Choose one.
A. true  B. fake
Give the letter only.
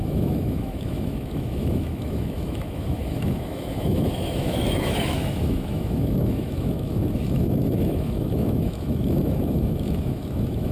B